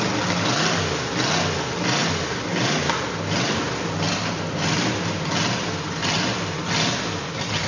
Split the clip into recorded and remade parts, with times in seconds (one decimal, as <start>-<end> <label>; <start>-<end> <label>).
0.0-7.7 recorded

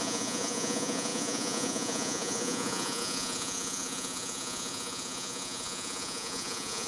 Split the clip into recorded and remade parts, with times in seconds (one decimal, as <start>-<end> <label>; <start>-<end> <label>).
0.0-6.9 remade

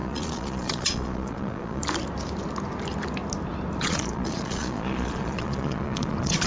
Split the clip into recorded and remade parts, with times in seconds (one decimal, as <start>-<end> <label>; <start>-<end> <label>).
0.0-1.8 remade; 1.8-3.8 recorded; 3.8-6.5 remade